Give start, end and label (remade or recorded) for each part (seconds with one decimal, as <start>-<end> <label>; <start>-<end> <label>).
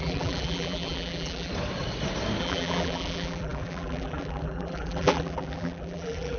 0.0-1.5 remade; 1.5-2.4 recorded; 2.4-6.4 remade